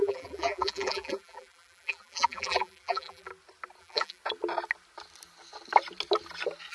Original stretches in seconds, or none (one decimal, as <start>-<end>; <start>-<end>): 3.3-3.8; 4.2-6.7